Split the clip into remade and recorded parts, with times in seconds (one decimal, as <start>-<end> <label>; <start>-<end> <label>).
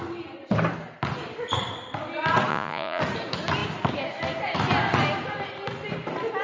0.0-2.5 recorded; 2.5-3.0 remade; 3.0-6.4 recorded